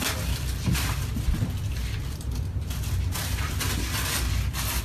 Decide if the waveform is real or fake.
real